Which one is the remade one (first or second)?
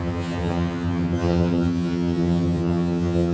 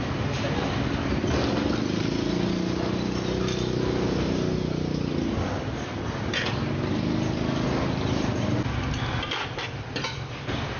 first